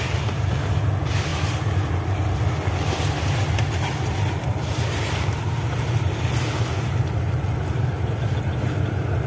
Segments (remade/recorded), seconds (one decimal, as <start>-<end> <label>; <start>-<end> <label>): 0.0-9.3 recorded